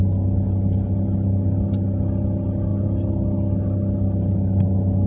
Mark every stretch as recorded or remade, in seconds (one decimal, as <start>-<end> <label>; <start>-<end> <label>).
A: 0.0-5.1 recorded